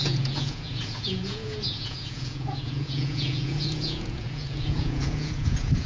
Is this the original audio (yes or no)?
no